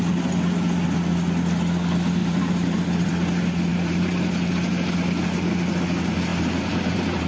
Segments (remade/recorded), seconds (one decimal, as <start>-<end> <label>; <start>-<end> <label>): 0.0-2.2 recorded; 2.2-3.1 remade; 3.1-3.7 recorded; 3.7-4.5 remade; 4.5-6.3 recorded; 6.3-7.3 remade